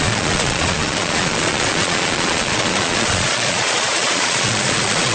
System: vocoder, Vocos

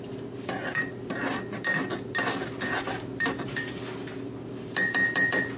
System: none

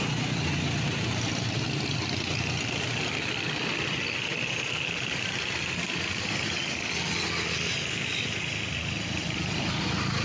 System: none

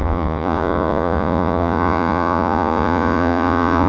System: vocoder, Vocos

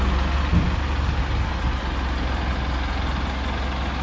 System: none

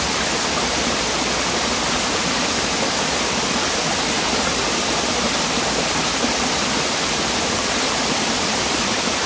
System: none